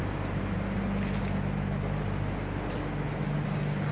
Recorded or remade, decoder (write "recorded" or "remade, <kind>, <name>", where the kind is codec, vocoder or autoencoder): recorded